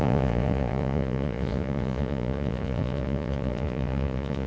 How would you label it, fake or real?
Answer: fake